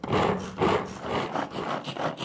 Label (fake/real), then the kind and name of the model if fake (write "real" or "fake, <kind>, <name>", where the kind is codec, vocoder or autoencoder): real